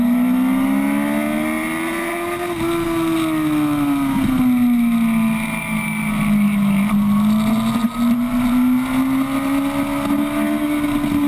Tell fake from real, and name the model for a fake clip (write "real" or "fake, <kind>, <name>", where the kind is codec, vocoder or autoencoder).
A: real